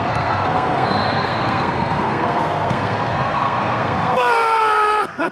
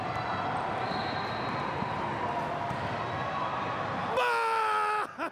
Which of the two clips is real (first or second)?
second